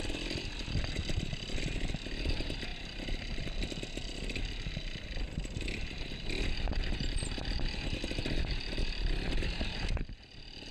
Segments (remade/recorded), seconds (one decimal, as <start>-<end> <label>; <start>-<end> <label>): 0.0-10.7 recorded